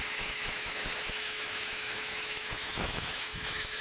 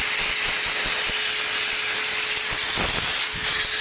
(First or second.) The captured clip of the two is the second